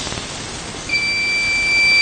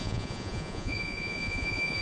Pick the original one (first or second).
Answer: first